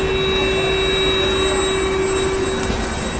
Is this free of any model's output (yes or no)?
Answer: yes